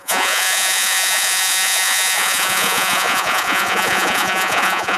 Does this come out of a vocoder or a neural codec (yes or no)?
yes